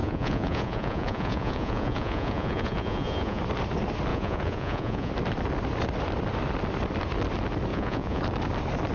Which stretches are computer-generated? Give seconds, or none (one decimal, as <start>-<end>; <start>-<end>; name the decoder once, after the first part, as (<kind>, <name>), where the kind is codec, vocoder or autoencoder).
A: 0.0-3.4 (vocoder, Vocos); 4.1-5.1; 7.7-8.2